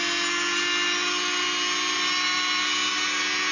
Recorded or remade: recorded